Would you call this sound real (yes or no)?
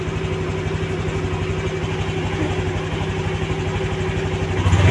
yes